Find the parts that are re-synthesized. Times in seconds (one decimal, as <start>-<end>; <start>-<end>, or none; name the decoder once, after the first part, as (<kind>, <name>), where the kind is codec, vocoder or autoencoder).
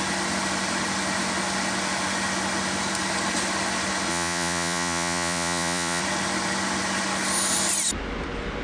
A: 4.1-6.0 (vocoder, Vocos)